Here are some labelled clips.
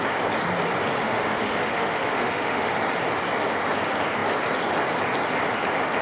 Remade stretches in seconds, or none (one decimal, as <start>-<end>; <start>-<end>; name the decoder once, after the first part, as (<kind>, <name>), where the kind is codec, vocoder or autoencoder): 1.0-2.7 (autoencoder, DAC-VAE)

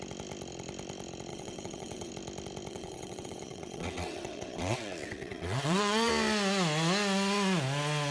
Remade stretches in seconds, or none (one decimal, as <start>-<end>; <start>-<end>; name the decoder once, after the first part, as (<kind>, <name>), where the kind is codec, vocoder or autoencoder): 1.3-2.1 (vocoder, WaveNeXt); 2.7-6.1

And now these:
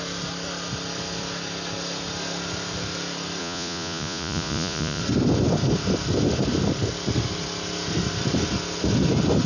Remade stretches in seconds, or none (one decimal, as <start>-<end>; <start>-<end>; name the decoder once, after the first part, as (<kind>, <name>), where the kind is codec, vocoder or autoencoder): 3.4-5.0 (vocoder, Vocos)